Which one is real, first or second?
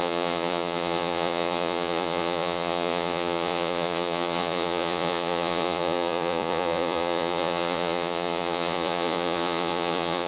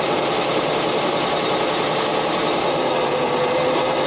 second